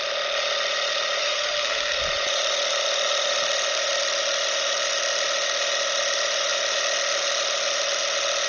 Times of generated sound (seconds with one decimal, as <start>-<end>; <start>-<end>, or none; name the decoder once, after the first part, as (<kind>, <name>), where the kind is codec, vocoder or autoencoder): 1.2-2.0 (codec, SNAC)